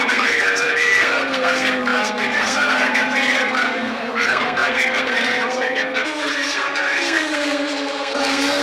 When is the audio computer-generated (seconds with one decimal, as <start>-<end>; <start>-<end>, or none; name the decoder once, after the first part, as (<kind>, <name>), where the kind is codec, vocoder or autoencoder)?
0.0-8.6 (codec, SNAC)